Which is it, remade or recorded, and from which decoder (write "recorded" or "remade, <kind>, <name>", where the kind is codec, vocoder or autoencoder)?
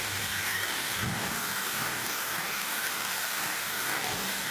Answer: remade, codec, DAC